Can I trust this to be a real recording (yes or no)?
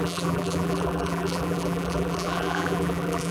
no